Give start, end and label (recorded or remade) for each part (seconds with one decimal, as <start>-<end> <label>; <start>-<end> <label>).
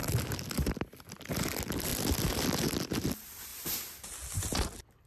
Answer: 0.0-5.1 recorded